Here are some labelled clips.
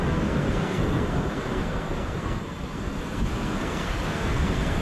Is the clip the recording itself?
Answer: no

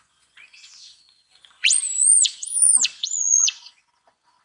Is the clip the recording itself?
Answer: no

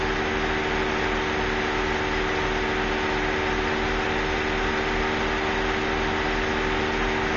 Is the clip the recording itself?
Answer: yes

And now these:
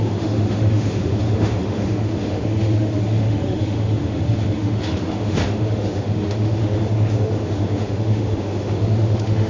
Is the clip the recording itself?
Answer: no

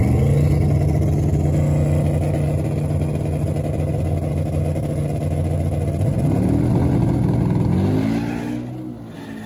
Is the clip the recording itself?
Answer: yes